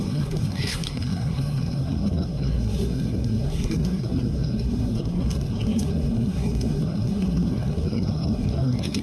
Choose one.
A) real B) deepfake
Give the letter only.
B